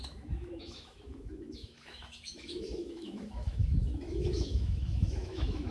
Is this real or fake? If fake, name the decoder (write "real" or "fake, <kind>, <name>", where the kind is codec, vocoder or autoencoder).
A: fake, autoencoder, DAC-VAE